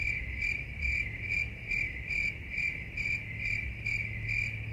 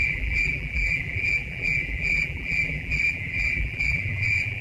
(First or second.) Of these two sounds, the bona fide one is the first